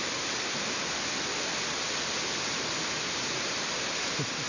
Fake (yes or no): no